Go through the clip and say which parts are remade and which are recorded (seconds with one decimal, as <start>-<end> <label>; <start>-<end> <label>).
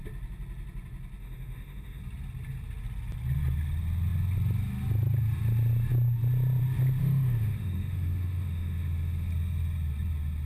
0.0-1.2 recorded; 1.2-2.0 remade; 2.0-7.0 recorded; 7.0-9.3 remade; 9.3-10.5 recorded